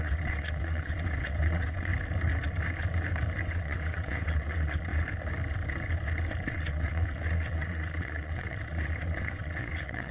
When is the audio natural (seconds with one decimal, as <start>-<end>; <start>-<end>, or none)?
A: 1.9-3.4; 4.9-6.5